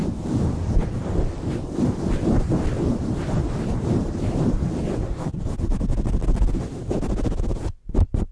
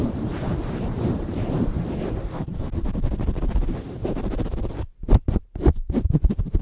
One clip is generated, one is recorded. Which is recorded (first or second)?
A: first